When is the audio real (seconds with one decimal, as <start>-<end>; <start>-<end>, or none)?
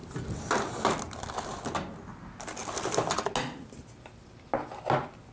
0.0-5.3